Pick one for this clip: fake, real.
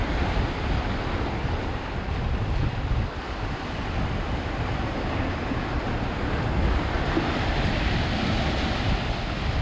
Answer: real